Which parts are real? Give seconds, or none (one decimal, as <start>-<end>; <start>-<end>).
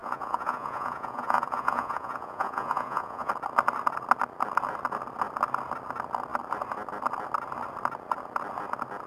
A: 3.3-9.1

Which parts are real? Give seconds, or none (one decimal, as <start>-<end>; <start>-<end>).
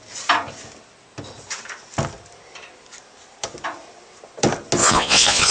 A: 0.0-4.8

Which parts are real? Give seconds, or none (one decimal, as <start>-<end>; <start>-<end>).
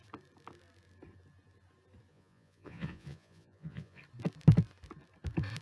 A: 0.0-2.1; 4.0-5.6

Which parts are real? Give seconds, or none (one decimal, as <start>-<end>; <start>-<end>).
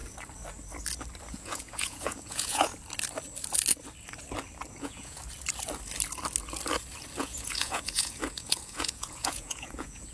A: 0.0-1.3; 2.7-4.8; 5.2-7.2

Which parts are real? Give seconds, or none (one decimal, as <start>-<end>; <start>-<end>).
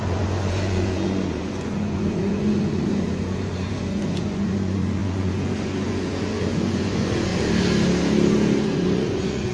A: 7.3-8.6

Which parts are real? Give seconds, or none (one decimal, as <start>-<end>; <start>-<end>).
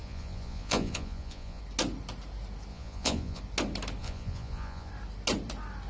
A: 1.6-2.7; 3.4-4.0; 4.9-5.9